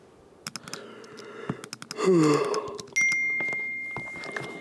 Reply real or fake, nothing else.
real